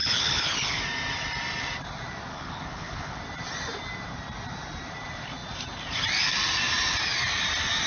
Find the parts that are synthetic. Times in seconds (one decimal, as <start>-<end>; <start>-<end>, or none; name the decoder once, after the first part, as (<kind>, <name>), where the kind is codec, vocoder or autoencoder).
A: 0.0-0.8 (codec, HILCodec); 2.3-3.2